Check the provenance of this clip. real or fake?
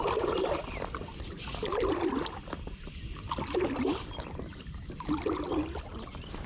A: real